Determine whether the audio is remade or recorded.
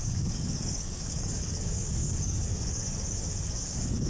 remade